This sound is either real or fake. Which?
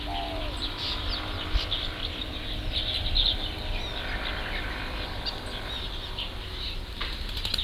real